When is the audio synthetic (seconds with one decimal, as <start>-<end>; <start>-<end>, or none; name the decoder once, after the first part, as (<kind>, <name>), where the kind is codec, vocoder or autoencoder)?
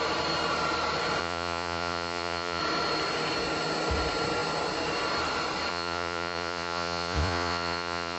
1.2-2.6 (vocoder, Vocos); 5.7-8.2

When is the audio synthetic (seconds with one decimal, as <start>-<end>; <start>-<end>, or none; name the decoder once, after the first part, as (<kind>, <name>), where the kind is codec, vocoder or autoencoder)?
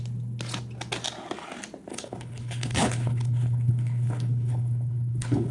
1.9-5.5 (codec, HILCodec)